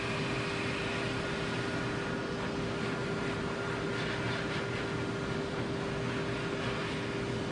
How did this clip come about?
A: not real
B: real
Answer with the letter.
B